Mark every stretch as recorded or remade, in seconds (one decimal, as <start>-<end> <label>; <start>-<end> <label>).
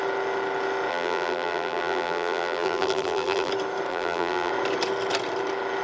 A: 0.0-0.9 recorded; 0.9-3.5 remade; 3.5-3.9 recorded; 3.9-4.5 remade; 4.5-5.8 recorded